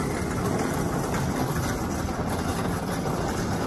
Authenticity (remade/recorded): recorded